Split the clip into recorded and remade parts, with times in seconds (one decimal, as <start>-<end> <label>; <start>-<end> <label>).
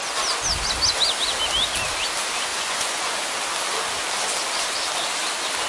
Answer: 0.0-2.5 recorded; 2.5-3.3 remade; 3.3-5.7 recorded